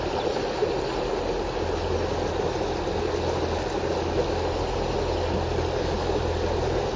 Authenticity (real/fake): real